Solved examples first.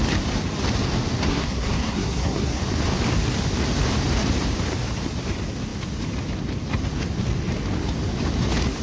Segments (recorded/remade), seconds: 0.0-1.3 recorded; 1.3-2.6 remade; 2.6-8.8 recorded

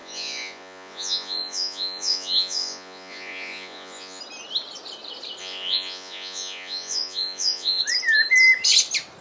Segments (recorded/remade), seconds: 0.0-4.2 remade; 4.2-5.4 recorded; 5.4-7.8 remade; 7.8-9.2 recorded

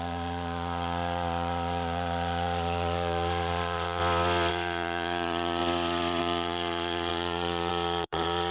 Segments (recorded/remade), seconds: 0.0-4.0 remade; 4.0-4.5 recorded; 4.5-5.6 remade; 5.6-6.2 recorded; 6.2-8.5 remade

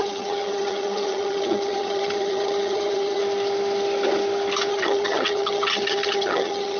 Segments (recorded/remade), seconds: 0.0-3.2 remade; 3.2-4.7 recorded; 4.7-6.8 remade

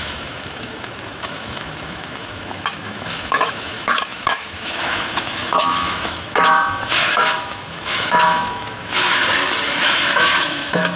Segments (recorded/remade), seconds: 0.0-9.2 remade; 9.2-9.8 recorded; 9.8-11.0 remade

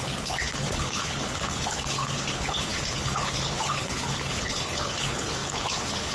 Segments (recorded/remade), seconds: 0.0-6.1 remade

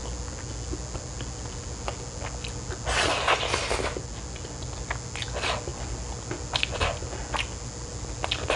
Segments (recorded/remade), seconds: 0.0-8.6 recorded

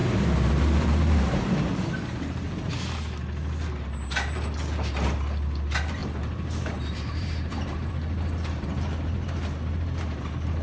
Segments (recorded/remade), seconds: 0.0-2.7 remade; 2.7-6.0 recorded; 6.0-7.9 remade; 7.9-10.6 recorded